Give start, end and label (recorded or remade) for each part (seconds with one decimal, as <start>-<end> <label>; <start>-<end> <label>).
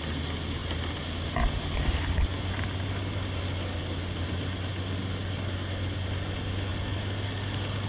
0.0-7.9 recorded